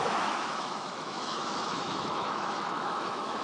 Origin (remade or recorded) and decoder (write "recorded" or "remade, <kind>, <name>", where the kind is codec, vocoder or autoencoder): remade, autoencoder, DAC-VAE